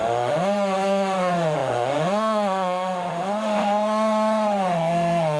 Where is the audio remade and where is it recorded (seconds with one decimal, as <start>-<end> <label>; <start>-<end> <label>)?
0.0-5.4 remade